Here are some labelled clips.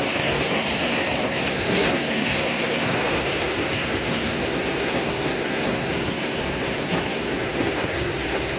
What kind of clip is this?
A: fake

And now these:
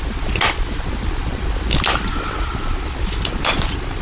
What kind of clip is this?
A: fake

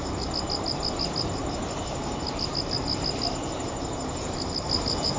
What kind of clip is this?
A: real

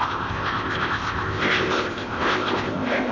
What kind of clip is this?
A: fake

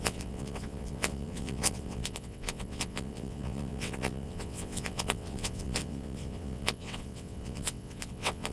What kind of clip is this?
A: fake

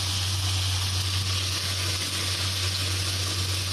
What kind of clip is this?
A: fake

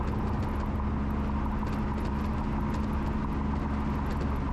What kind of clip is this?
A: real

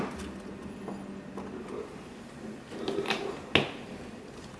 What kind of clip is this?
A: real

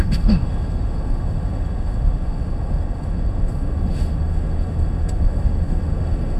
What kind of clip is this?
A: fake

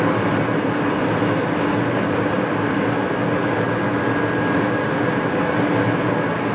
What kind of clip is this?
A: real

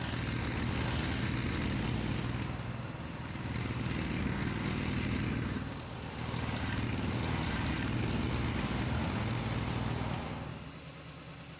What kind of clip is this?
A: real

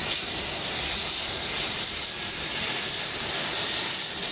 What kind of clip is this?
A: fake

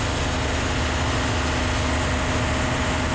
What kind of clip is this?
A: real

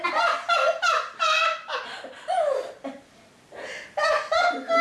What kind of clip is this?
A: real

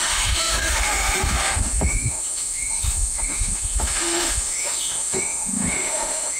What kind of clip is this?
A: fake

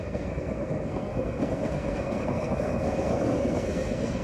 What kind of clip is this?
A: fake